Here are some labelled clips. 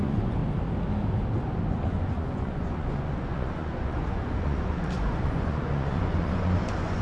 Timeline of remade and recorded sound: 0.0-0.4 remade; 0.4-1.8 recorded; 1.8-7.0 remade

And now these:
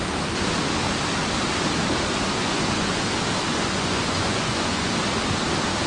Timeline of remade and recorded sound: 0.0-2.4 recorded; 2.4-3.0 remade; 3.0-3.5 recorded; 3.5-4.9 remade; 4.9-5.9 recorded

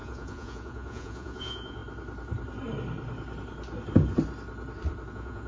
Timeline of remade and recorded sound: 0.0-1.8 remade; 1.8-5.1 recorded; 5.1-5.5 remade

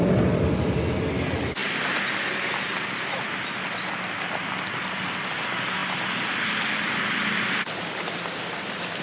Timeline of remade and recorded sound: 0.0-9.0 recorded

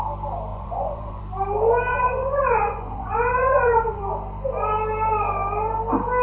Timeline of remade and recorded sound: 0.0-0.5 recorded; 0.5-1.2 remade; 1.2-1.9 recorded; 1.9-4.0 remade; 4.0-6.2 recorded

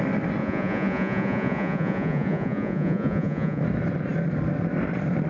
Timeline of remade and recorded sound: 0.0-0.4 recorded; 0.4-3.6 remade; 3.6-5.3 recorded

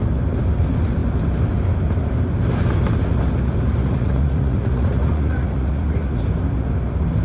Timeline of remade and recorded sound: 0.0-3.8 recorded; 3.8-6.2 remade; 6.2-7.2 recorded

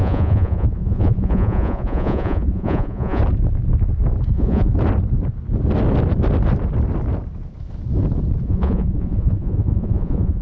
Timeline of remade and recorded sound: 0.0-3.2 remade; 3.2-4.3 recorded; 4.3-4.7 remade; 4.7-8.4 recorded; 8.4-10.4 remade